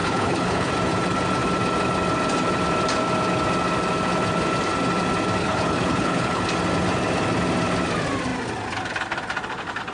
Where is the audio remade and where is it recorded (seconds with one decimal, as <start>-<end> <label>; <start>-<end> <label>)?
0.0-0.7 remade; 0.7-5.4 recorded; 5.4-6.4 remade; 6.4-9.9 recorded